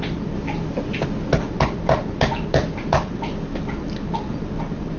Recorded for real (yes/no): yes